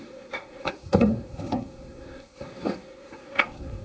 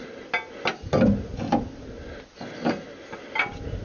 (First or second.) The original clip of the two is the second